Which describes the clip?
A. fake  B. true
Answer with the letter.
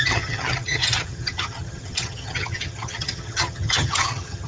A